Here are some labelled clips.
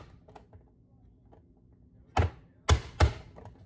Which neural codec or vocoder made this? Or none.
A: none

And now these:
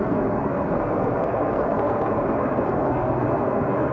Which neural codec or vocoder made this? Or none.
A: codec, SNAC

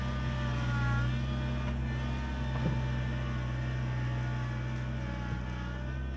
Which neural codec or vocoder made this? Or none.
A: none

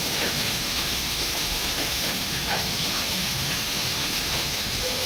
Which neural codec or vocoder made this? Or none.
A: autoencoder, DAC-VAE